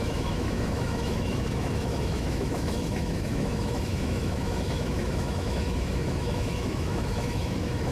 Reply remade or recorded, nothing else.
remade